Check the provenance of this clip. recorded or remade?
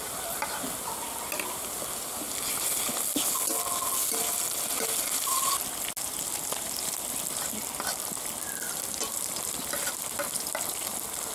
recorded